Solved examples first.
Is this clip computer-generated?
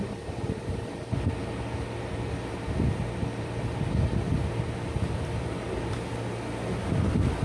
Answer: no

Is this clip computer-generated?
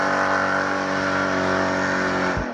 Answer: no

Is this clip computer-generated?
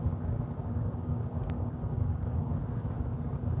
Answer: yes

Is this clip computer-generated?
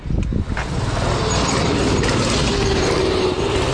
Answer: no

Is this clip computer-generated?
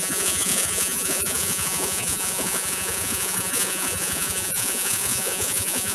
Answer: yes